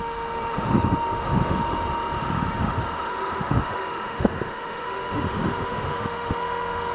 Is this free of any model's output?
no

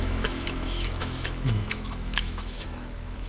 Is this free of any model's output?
no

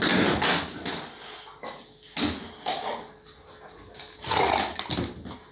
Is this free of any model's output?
yes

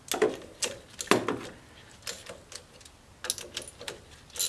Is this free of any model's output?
yes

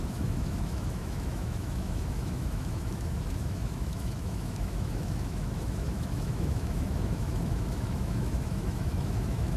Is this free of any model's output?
no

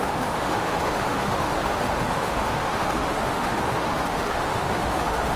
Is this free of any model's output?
no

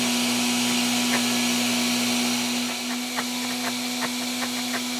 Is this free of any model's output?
yes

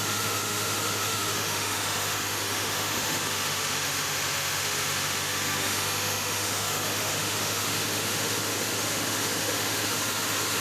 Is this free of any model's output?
no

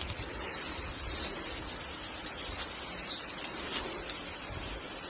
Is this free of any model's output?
yes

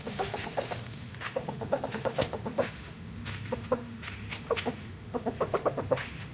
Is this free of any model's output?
no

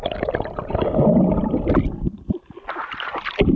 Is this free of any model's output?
yes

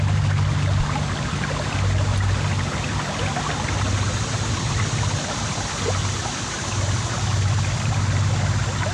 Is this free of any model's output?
yes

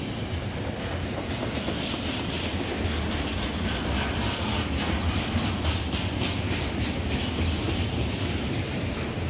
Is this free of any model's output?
yes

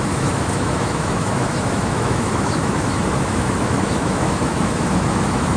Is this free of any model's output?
no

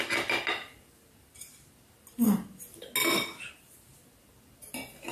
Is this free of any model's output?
yes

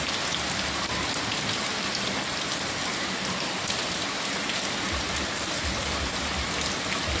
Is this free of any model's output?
yes